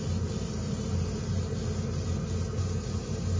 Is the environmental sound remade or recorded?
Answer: recorded